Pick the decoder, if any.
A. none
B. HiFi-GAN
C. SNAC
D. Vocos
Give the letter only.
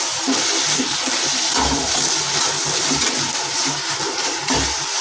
A